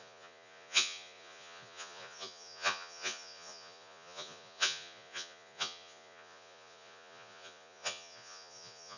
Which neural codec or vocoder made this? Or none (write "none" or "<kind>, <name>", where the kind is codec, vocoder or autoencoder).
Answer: vocoder, Vocos